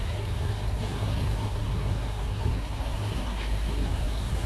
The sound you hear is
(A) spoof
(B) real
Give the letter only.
A